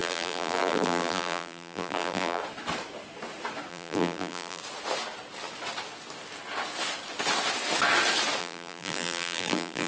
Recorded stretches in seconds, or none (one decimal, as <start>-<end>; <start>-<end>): 2.4-3.7; 4.6-8.4